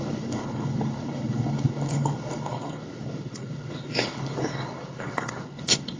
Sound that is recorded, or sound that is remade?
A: remade